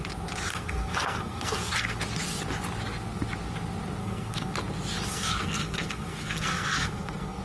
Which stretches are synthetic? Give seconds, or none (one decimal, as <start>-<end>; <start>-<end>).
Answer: 0.5-2.0; 4.0-4.5; 5.1-7.4